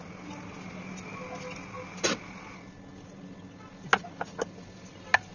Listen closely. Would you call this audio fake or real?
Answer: real